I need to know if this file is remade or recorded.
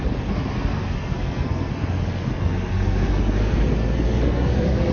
remade